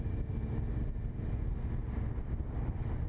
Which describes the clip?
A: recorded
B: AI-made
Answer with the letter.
A